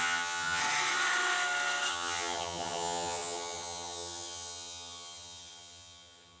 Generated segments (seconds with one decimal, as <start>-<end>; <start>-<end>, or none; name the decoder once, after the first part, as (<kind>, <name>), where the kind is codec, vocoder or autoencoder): 0.0-0.6 (vocoder, HiFi-GAN); 1.9-6.4